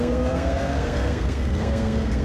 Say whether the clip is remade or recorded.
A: remade